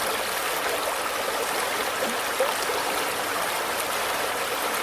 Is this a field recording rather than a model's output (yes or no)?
yes